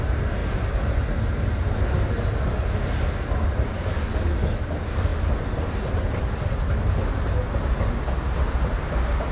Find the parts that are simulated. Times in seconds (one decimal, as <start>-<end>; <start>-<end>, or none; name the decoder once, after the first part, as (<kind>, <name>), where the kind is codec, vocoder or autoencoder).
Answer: none